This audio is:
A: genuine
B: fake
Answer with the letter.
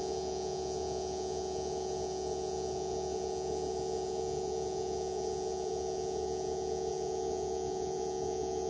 B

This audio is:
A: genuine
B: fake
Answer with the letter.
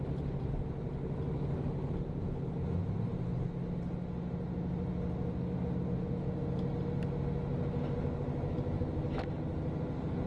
A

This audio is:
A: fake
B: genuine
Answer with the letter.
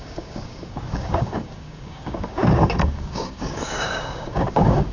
A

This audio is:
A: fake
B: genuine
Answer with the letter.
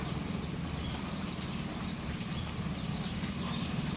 B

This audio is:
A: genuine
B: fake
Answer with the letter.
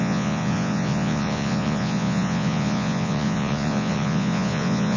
B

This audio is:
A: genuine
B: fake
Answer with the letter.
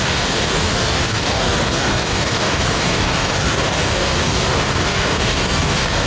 B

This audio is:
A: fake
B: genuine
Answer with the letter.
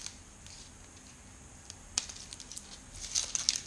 B